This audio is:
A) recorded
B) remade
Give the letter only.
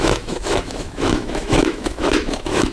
B